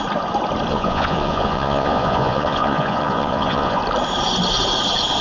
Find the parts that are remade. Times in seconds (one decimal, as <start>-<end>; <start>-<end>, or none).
0.7-3.8

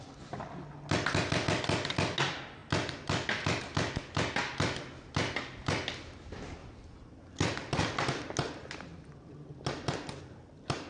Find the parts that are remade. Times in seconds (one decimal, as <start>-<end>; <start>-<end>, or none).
none

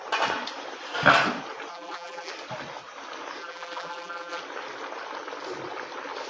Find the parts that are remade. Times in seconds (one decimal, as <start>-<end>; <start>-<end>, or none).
1.7-2.3; 3.4-4.4